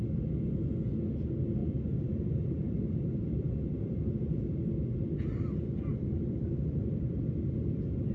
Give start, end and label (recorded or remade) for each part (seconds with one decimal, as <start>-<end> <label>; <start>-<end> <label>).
0.0-1.6 recorded; 1.6-4.0 remade; 4.0-5.9 recorded; 5.9-7.2 remade; 7.2-8.1 recorded